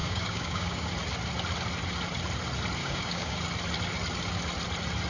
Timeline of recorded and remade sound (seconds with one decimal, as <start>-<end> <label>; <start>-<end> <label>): 0.0-0.9 remade; 0.9-2.8 recorded; 2.8-3.4 remade; 3.4-5.1 recorded